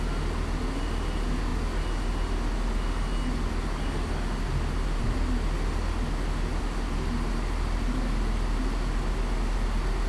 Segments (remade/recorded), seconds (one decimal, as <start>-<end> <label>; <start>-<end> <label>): 0.0-10.1 recorded